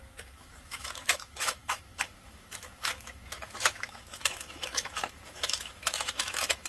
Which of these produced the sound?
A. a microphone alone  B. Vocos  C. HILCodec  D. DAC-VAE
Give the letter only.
D